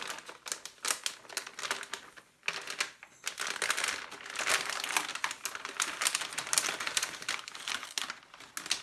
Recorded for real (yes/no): yes